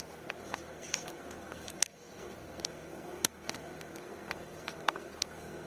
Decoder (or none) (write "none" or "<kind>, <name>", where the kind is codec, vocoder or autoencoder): codec, SNAC